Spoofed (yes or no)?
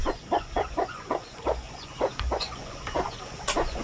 yes